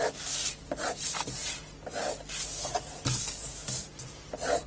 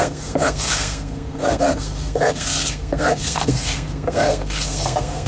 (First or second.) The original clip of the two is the first